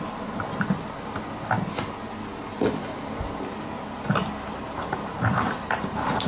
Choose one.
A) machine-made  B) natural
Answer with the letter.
B